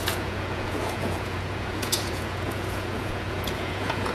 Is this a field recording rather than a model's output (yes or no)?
no